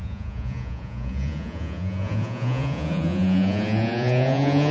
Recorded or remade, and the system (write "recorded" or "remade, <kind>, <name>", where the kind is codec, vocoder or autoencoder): remade, vocoder, Vocos